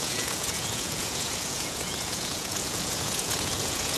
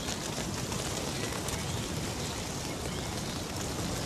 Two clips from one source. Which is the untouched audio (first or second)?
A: second